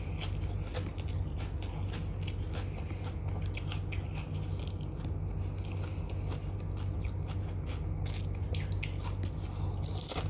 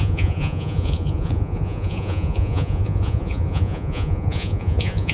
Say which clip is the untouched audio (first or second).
first